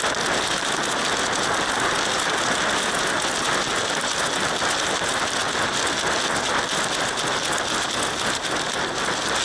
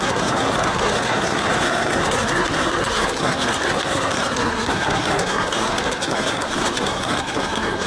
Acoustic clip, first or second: first